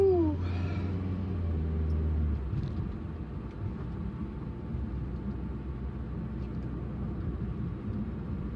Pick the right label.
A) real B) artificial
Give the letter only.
A